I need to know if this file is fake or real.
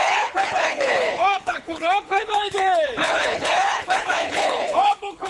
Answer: fake